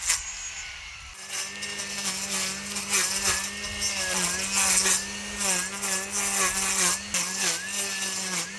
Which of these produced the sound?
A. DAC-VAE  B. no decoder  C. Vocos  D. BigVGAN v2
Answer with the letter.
B